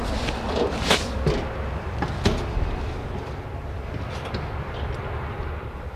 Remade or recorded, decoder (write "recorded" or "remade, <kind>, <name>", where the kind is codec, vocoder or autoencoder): recorded